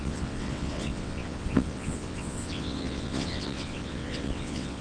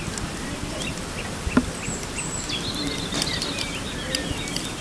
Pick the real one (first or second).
second